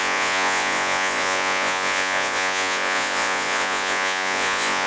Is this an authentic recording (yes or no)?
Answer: no